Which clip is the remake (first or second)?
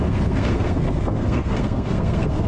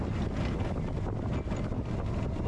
first